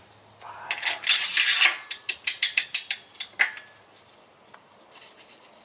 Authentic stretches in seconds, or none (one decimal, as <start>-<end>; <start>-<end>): 0.0-1.7; 3.2-5.6